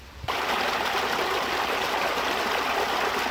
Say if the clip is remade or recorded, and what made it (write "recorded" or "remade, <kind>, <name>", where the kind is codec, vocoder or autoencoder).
recorded